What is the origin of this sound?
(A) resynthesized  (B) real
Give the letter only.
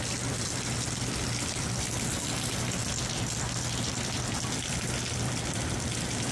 B